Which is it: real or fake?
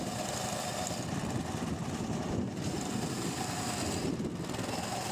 real